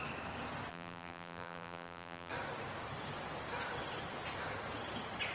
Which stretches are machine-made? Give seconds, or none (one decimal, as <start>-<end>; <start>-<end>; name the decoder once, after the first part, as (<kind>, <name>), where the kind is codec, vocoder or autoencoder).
0.7-2.3 (vocoder, BigVGAN v2)